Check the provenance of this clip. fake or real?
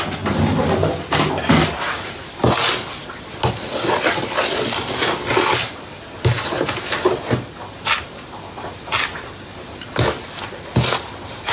real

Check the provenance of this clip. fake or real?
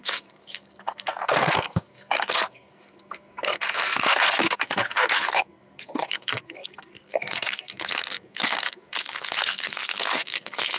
fake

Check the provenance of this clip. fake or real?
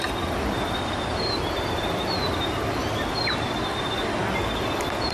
real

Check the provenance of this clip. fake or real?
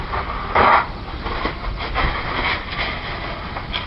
real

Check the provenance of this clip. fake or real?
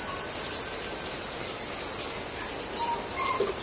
real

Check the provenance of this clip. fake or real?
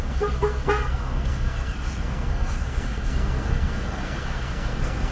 fake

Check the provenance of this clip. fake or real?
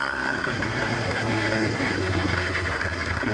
fake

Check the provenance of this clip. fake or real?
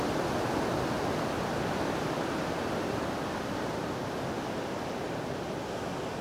real